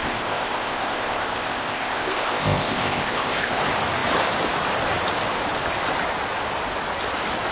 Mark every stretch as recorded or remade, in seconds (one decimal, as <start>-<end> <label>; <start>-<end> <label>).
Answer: 0.0-3.6 remade; 3.6-7.5 recorded